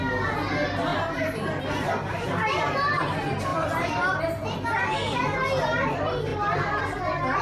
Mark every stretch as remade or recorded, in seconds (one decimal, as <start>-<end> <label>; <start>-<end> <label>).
0.0-3.5 recorded; 3.5-4.2 remade; 4.2-6.3 recorded; 6.3-7.0 remade; 7.0-7.4 recorded